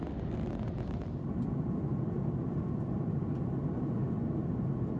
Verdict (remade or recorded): recorded